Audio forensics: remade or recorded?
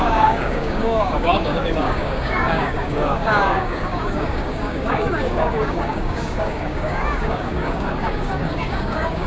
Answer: remade